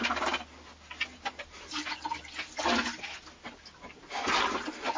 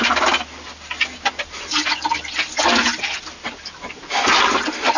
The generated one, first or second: second